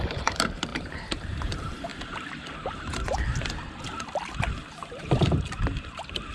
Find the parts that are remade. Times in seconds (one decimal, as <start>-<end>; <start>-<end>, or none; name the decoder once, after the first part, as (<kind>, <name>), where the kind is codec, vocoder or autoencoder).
0.0-1.9 (vocoder, BigVGAN v2); 5.0-6.3